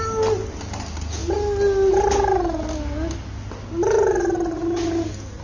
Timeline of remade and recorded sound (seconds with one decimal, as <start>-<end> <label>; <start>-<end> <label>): 0.0-5.4 recorded